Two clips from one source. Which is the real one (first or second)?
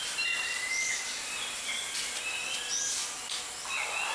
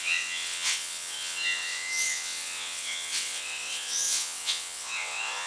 first